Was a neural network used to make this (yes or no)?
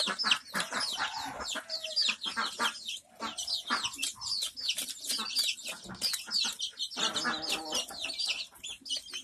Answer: no